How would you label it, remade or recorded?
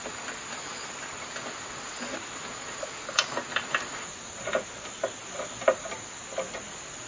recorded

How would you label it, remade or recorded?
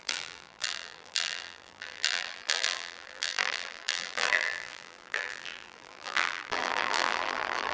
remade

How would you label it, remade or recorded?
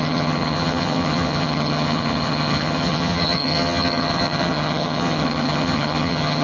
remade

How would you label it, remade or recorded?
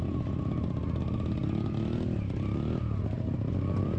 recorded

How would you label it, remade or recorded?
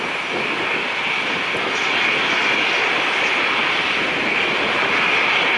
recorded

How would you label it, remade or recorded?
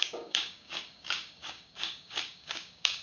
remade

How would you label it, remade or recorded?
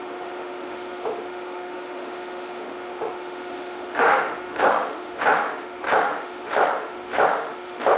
remade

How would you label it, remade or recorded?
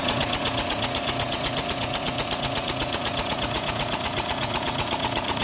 remade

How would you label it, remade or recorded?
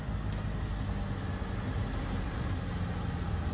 recorded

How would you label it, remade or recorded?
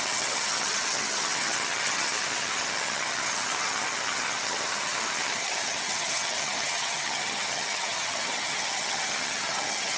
remade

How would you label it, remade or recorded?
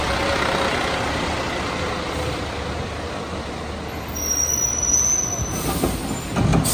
recorded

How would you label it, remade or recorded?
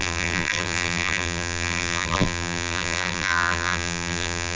remade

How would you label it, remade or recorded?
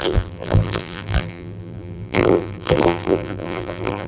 remade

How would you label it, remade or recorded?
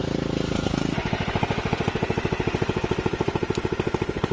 recorded